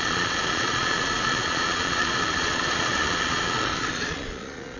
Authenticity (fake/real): fake